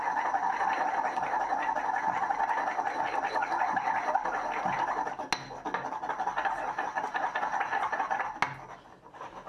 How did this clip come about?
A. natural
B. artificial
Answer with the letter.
A